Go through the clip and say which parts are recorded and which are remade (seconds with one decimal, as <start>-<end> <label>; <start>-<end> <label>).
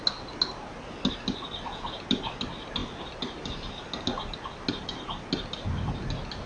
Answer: 0.0-6.5 recorded